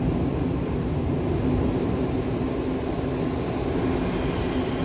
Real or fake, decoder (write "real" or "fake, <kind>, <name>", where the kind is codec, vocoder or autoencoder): real